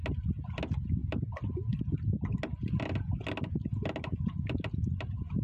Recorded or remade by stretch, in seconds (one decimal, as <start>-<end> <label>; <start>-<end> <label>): 0.0-5.4 recorded